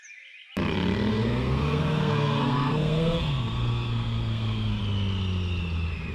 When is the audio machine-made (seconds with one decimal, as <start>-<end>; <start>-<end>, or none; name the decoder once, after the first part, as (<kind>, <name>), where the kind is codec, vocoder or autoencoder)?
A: 1.1-4.8 (codec, SNAC)